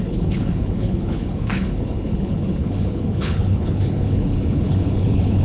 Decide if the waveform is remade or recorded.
remade